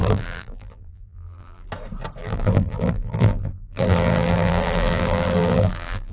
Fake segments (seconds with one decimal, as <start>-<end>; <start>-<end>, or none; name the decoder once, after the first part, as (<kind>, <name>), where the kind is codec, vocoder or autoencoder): 0.0-1.7 (vocoder, BigVGAN v2); 2.2-6.1